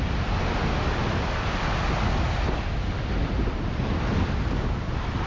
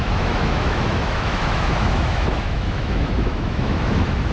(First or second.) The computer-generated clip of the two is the second